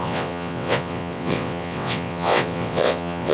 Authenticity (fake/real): fake